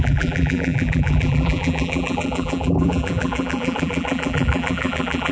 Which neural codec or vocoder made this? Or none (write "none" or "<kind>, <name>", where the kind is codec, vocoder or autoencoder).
vocoder, BigVGAN v2